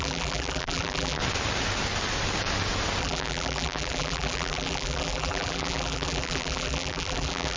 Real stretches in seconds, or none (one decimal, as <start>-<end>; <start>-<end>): 1.2-3.0